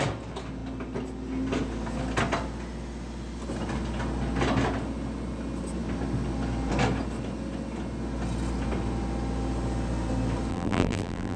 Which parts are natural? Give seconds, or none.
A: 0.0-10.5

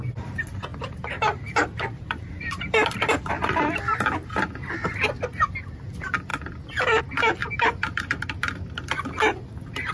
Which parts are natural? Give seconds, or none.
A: 0.0-0.7; 3.3-7.4; 8.5-9.9

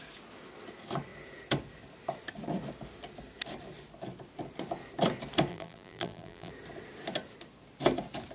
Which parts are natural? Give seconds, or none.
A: 0.0-5.5; 6.5-8.3

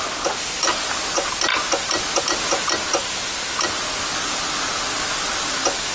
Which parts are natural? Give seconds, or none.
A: 0.0-5.9

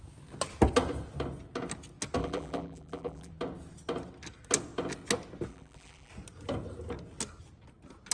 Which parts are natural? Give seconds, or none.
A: 0.0-2.2; 3.3-5.5; 6.1-8.1